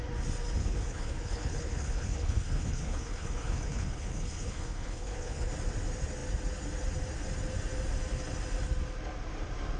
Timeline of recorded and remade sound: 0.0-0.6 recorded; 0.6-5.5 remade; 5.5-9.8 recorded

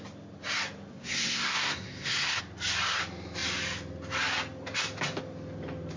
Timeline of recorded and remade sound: 0.0-0.9 recorded; 0.9-2.4 remade; 2.4-6.0 recorded